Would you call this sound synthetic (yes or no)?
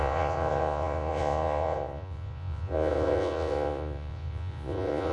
yes